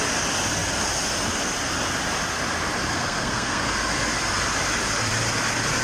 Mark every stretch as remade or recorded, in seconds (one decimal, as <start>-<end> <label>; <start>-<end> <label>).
0.0-2.9 recorded; 2.9-3.7 remade; 3.7-5.8 recorded